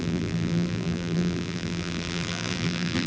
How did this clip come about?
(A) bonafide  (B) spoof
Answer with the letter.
B